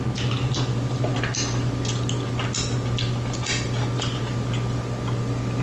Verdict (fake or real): real